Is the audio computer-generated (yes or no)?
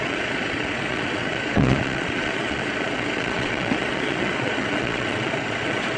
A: yes